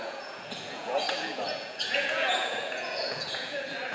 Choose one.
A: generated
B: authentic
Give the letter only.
A